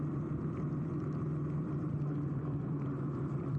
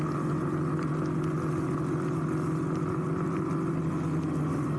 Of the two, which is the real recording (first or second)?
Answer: second